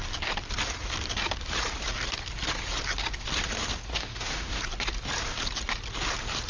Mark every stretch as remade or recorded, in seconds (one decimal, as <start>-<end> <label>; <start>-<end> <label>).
0.0-3.9 recorded; 3.9-4.6 remade; 4.6-6.5 recorded